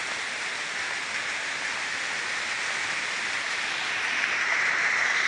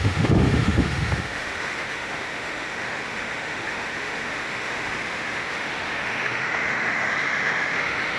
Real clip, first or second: first